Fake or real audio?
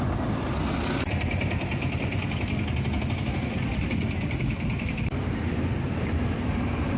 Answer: real